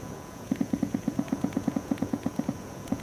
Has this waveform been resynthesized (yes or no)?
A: yes